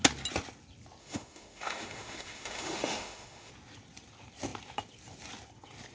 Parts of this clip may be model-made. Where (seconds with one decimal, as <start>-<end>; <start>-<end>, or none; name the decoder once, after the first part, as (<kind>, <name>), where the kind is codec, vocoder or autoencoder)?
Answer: 1.0-3.5 (autoencoder, DAC-VAE)